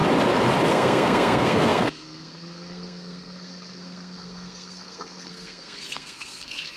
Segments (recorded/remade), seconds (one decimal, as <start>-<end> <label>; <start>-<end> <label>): 0.0-0.7 recorded; 0.7-6.8 remade